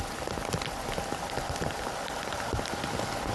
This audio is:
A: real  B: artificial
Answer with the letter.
A